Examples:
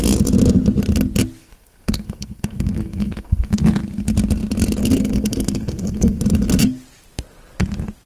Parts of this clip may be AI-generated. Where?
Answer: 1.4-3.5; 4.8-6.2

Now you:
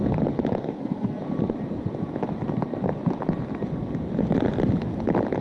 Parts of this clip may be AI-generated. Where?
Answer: 0.6-1.2

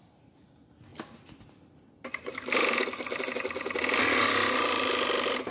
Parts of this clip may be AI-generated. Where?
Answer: none

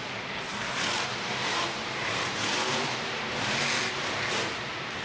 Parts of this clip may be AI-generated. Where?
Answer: 0.5-3.5

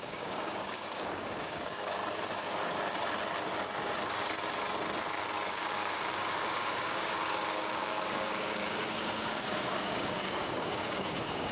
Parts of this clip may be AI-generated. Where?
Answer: 0.0-2.0; 5.5-11.5